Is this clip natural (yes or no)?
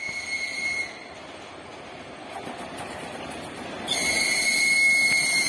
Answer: yes